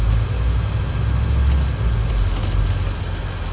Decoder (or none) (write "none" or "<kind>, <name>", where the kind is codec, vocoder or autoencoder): none